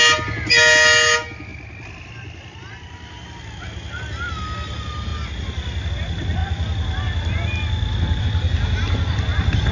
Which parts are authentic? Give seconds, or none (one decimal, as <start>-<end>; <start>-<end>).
0.0-1.5; 3.4-9.7